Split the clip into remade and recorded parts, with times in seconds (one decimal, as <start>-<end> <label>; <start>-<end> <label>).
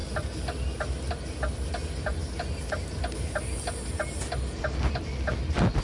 0.0-5.8 recorded